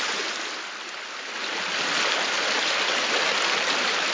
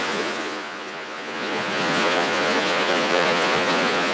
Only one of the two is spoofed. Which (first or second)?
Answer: second